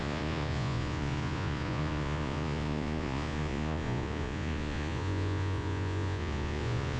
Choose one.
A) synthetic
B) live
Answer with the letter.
A